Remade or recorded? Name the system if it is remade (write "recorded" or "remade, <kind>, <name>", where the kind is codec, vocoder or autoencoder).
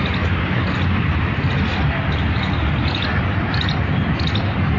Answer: recorded